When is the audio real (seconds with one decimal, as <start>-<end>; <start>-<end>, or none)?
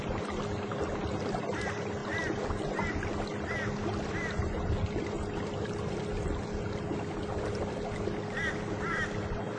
0.0-9.6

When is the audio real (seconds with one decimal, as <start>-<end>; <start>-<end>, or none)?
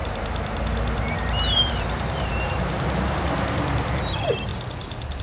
4.5-5.2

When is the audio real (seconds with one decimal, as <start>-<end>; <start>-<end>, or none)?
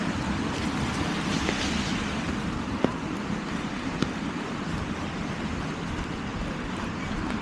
0.0-1.9; 4.6-6.3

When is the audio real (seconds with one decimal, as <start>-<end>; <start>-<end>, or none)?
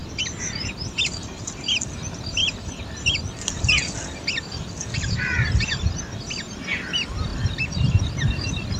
1.4-2.4; 3.2-7.3; 8.1-8.8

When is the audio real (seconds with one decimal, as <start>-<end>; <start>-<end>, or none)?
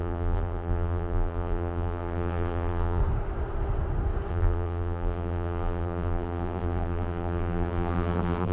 3.0-4.3